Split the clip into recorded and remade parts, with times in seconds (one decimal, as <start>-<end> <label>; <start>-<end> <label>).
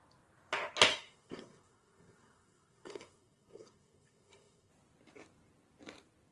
0.0-0.9 recorded; 0.9-4.7 remade; 4.7-6.3 recorded